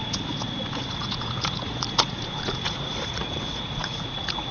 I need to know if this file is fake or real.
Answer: fake